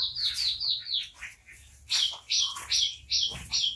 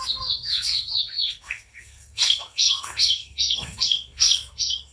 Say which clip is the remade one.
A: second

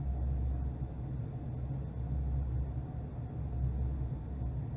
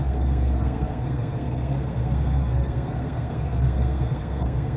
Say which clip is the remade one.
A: second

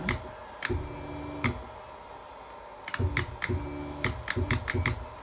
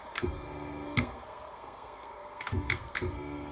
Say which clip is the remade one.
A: second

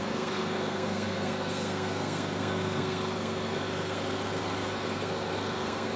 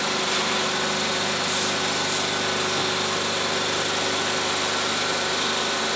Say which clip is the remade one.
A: first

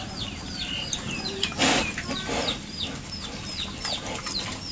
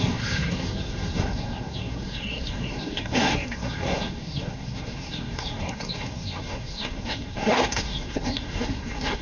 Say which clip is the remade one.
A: second